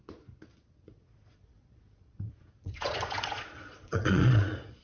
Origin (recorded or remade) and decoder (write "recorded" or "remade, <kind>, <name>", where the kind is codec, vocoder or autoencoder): remade, vocoder, Vocos